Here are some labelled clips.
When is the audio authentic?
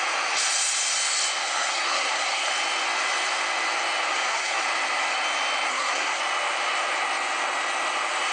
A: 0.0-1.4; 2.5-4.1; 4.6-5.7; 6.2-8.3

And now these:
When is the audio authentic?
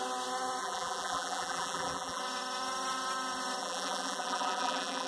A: 0.0-0.6; 2.2-3.6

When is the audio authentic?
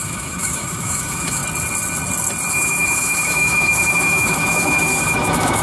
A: 1.4-2.5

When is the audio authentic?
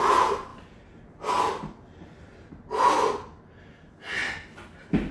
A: 0.0-5.1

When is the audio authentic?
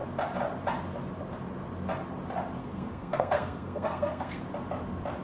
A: 0.0-2.6; 4.4-5.2